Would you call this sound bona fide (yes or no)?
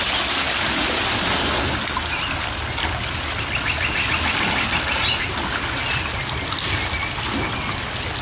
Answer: yes